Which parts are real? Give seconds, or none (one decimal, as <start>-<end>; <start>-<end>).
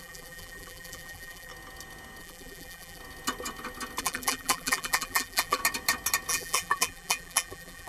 1.5-2.2; 3.0-4.0; 5.6-6.3